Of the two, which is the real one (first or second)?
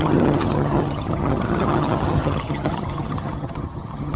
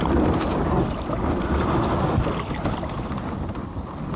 second